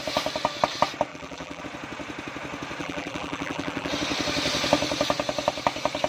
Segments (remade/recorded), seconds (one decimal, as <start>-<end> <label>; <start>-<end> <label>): 0.0-1.1 recorded; 1.1-1.6 remade; 1.6-2.8 recorded; 2.8-3.9 remade; 3.9-6.1 recorded